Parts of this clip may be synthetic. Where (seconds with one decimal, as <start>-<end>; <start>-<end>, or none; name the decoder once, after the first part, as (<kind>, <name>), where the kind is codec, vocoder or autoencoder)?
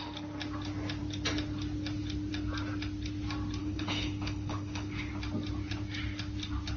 3.6-5.1 (codec, HILCodec)